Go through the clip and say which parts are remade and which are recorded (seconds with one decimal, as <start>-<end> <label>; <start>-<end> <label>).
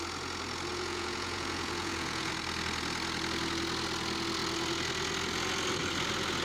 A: 0.0-0.7 recorded; 0.7-2.3 remade; 2.3-6.4 recorded